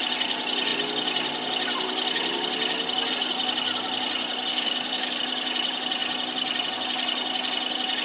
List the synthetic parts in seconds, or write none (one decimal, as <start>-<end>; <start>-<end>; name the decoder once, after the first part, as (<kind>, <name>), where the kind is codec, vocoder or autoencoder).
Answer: 4.5-5.2 (codec, DAC)